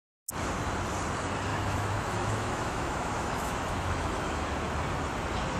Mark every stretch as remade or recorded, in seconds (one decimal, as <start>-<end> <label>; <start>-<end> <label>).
0.0-1.5 recorded; 1.5-4.4 remade; 4.4-5.6 recorded